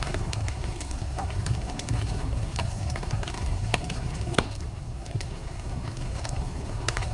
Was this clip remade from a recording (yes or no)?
yes